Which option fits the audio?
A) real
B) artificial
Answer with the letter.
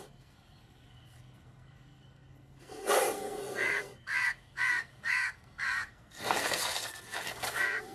B